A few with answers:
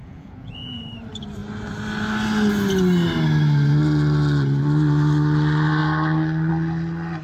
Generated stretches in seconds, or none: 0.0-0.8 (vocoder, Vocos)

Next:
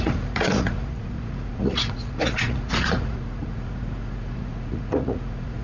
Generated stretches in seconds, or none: 0.0-5.6 (vocoder, Vocos)